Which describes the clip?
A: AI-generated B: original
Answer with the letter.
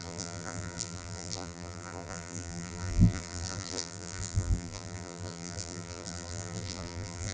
A